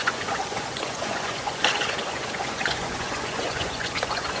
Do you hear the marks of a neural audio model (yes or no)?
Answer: yes